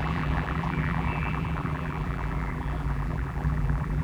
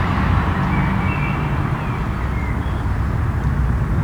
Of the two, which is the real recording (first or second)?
second